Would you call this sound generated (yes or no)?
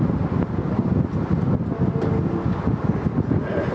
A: no